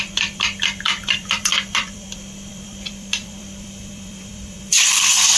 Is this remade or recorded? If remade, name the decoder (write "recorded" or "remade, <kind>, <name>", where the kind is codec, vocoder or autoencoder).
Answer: remade, vocoder, BigVGAN v2